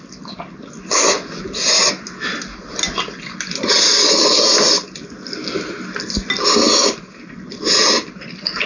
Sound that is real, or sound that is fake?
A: real